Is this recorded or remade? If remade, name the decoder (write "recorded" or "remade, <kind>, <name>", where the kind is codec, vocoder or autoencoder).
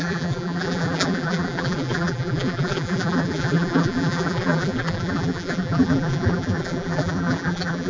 remade, vocoder, BigVGAN v2